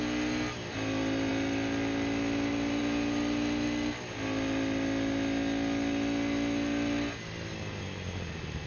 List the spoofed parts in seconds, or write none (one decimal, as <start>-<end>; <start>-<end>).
none